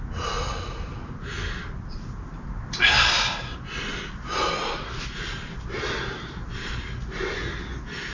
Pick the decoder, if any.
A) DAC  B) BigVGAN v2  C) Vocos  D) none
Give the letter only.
D